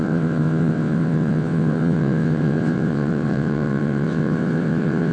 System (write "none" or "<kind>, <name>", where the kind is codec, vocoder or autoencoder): vocoder, WaveNeXt